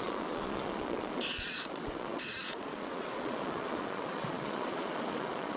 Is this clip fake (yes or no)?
yes